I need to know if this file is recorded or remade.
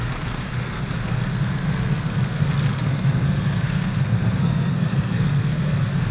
remade